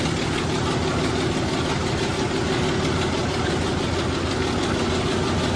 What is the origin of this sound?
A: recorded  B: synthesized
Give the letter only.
A